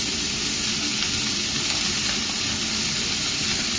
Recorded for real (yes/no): yes